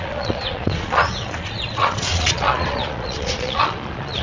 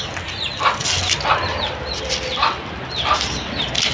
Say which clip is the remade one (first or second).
first